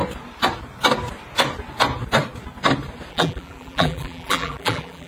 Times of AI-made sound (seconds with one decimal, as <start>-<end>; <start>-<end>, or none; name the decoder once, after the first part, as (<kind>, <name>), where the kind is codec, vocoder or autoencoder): 3.1-5.1 (vocoder, BigVGAN v2)